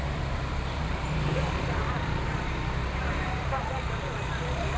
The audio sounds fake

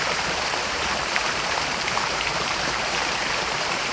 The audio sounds fake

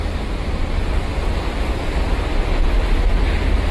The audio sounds real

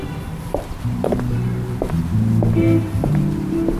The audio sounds fake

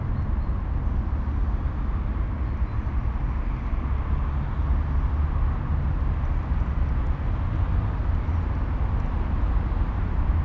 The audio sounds real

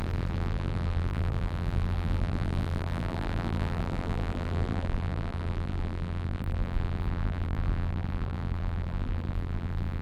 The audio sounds fake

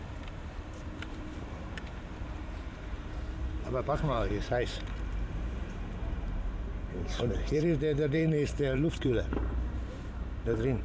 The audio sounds fake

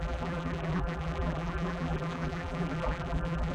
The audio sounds fake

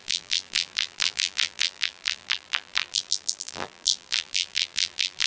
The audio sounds fake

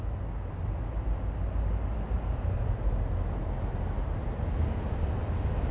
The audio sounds real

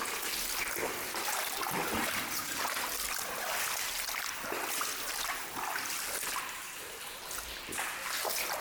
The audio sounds fake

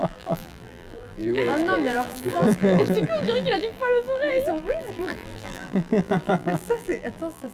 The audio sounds fake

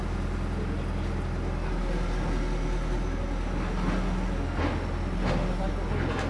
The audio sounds real